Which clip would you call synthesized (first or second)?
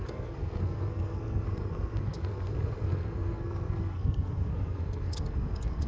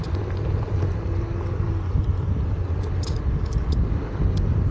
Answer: first